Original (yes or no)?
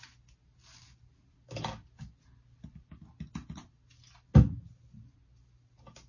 yes